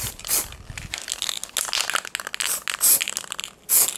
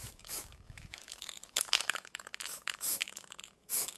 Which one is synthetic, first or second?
second